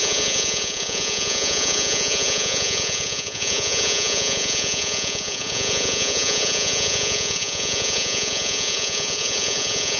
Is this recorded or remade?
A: remade